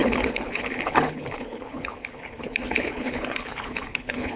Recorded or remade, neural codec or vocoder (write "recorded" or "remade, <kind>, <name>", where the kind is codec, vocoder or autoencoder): remade, codec, HILCodec